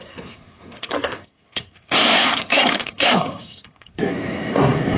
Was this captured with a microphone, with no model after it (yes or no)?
no